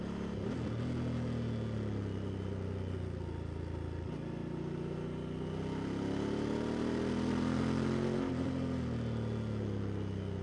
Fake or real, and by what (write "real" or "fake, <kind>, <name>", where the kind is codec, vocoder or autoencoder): real